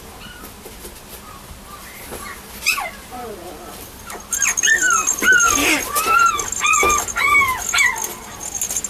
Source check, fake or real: real